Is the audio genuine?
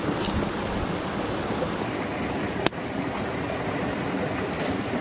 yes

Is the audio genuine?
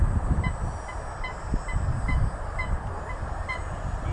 yes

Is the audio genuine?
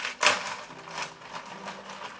yes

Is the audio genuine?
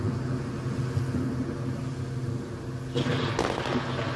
yes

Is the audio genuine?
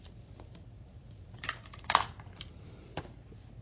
no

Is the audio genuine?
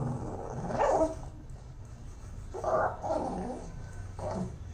no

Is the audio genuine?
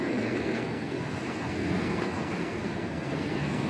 no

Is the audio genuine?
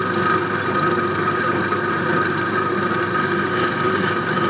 yes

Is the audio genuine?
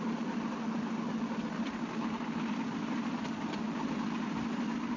yes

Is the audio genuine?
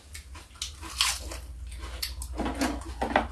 yes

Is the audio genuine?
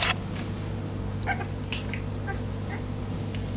yes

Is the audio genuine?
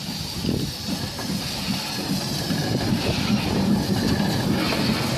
yes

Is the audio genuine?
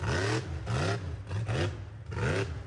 yes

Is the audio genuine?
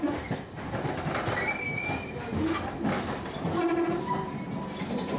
yes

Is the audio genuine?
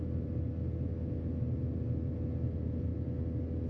yes